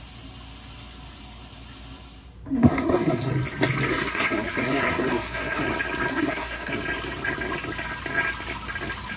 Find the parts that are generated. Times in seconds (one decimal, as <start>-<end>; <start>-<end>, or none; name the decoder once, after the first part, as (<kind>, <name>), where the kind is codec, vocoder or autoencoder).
2.6-3.3 (codec, SNAC); 3.9-5.6; 6.1-6.7